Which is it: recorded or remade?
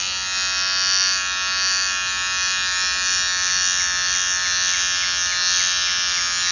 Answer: recorded